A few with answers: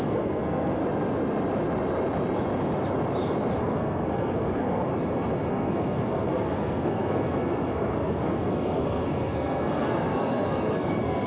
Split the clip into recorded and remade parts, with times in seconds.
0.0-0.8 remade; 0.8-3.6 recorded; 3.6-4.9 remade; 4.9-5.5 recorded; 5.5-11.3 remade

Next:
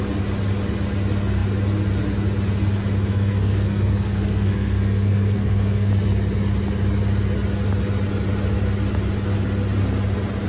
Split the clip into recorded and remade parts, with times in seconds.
0.0-3.1 recorded; 3.1-5.9 remade; 5.9-10.5 recorded

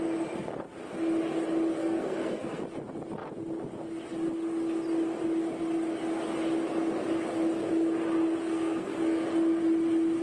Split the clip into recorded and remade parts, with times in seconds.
0.0-1.8 recorded; 1.8-2.6 remade; 2.6-8.4 recorded; 8.4-9.2 remade; 9.2-10.2 recorded

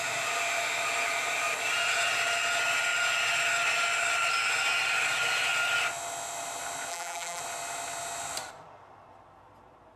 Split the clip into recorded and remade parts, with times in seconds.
0.0-6.9 recorded; 6.9-7.4 remade; 7.4-10.0 recorded